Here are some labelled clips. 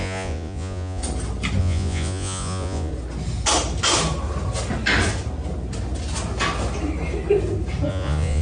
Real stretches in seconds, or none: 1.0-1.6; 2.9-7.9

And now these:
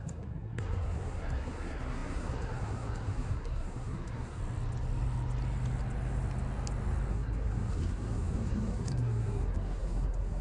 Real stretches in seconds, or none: 4.4-7.1